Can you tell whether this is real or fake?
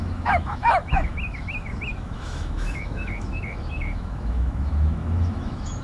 fake